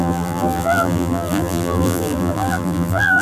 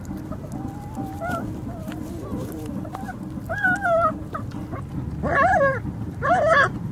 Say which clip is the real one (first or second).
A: second